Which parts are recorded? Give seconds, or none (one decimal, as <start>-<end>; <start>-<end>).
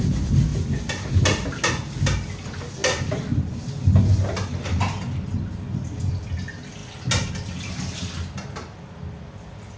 0.0-9.8